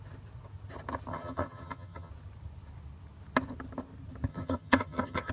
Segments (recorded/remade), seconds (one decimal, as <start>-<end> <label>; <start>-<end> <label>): 0.0-1.1 recorded; 1.1-2.1 remade; 2.1-4.3 recorded; 4.3-5.3 remade